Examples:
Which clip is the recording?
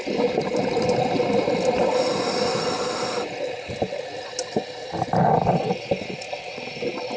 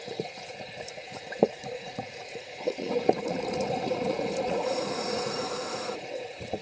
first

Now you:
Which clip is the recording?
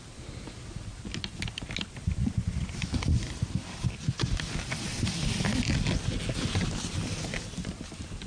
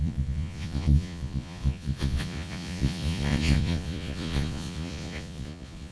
first